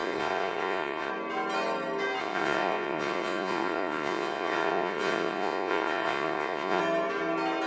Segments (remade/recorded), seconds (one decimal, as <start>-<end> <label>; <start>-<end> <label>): 0.0-1.1 remade; 1.1-2.2 recorded; 2.2-6.8 remade; 6.8-7.7 recorded